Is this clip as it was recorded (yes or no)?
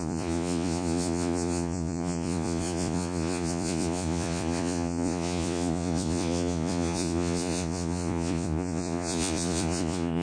no